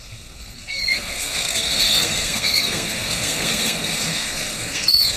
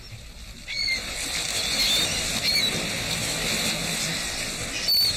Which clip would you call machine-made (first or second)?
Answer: first